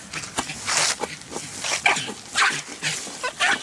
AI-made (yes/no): yes